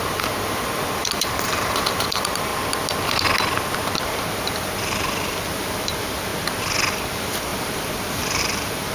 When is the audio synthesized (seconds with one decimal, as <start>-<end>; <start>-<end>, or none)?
0.0-2.5; 4.0-6.3; 6.9-8.9